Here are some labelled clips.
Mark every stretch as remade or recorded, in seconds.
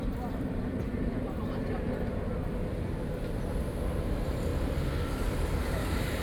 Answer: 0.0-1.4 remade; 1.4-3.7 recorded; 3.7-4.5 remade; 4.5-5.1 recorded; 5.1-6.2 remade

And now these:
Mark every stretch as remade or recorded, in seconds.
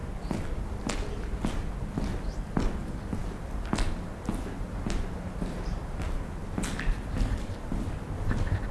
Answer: 0.0-8.7 recorded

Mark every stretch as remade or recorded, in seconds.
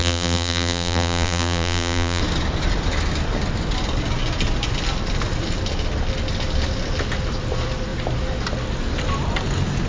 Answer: 0.0-2.2 remade; 2.2-9.9 recorded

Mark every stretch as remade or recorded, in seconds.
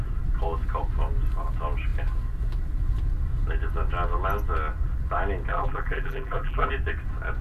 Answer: 0.0-5.5 recorded; 5.5-6.7 remade; 6.7-7.4 recorded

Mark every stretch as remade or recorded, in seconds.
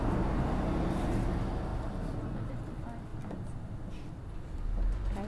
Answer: 0.0-1.7 recorded; 1.7-2.5 remade; 2.5-5.3 recorded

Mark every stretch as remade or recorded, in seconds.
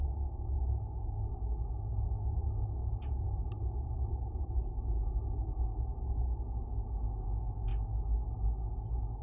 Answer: 0.0-2.8 recorded; 2.8-3.3 remade; 3.3-9.2 recorded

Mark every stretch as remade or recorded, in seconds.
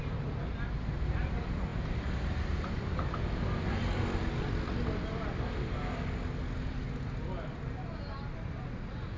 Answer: 0.0-1.7 recorded; 1.7-3.7 remade; 3.7-9.2 recorded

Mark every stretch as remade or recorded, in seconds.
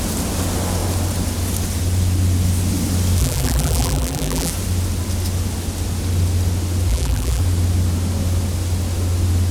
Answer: 0.0-3.2 recorded; 3.2-4.5 remade; 4.5-6.9 recorded; 6.9-7.4 remade; 7.4-9.5 recorded